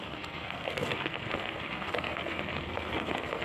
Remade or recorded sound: remade